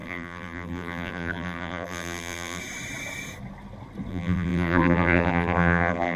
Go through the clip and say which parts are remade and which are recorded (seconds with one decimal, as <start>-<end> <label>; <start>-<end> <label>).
0.0-2.6 remade; 2.6-4.1 recorded; 4.1-6.2 remade